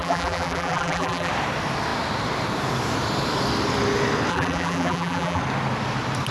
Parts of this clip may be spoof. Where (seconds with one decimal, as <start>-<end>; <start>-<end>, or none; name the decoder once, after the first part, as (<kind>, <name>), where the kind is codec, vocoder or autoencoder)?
0.0-1.3 (vocoder, BigVGAN v2); 4.3-5.4